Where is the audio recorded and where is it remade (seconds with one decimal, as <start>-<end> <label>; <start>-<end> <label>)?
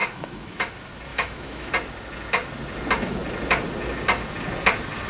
0.0-0.7 remade; 0.7-1.1 recorded; 1.1-1.7 remade; 1.7-5.1 recorded